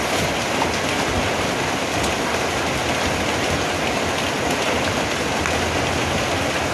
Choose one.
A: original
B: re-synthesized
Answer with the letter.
A